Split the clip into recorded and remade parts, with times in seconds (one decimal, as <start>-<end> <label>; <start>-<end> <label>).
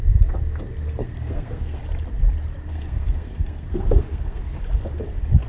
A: 0.0-1.0 recorded; 1.0-1.8 remade; 1.8-2.7 recorded; 2.7-4.6 remade; 4.6-5.5 recorded